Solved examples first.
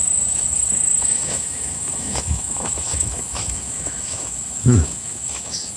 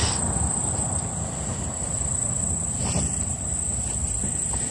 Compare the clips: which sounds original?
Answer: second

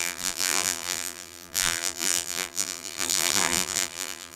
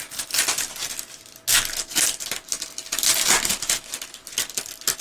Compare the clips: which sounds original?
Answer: second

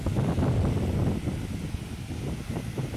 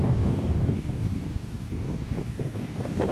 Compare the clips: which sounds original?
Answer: first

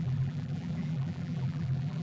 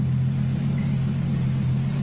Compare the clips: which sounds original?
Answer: second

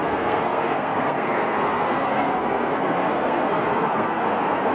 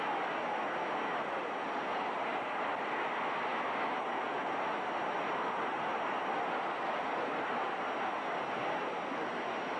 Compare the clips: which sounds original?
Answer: second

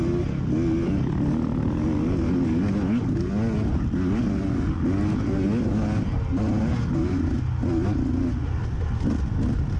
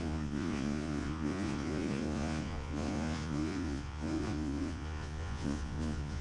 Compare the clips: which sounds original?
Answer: first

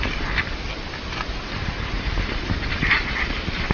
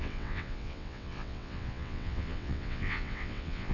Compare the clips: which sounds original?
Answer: first